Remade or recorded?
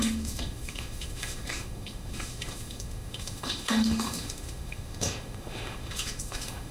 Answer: remade